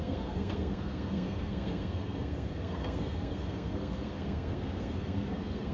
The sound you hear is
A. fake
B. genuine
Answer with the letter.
A